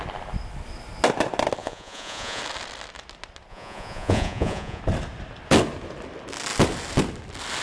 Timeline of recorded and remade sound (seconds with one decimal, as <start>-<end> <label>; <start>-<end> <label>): 0.0-1.6 recorded; 1.6-2.4 remade; 2.4-3.5 recorded; 3.5-4.8 remade; 4.8-7.6 recorded